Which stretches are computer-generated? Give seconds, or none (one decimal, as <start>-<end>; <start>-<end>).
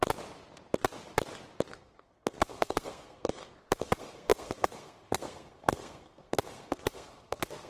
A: 1.7-7.7